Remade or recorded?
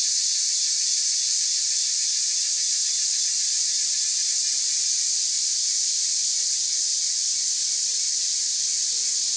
recorded